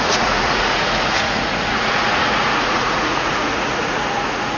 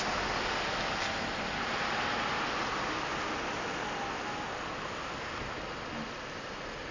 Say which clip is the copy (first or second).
first